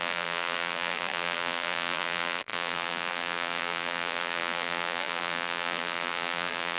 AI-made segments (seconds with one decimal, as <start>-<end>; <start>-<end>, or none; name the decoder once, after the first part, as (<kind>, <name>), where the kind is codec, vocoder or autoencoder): 0.0-6.8 (vocoder, BigVGAN v2)